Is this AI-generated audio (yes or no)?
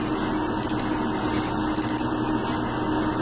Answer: no